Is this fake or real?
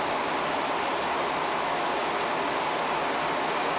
real